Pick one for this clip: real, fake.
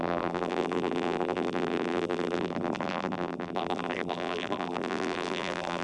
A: fake